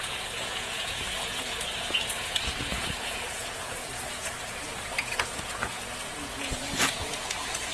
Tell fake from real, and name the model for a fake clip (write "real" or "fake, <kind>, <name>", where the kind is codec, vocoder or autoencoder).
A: fake, vocoder, Vocos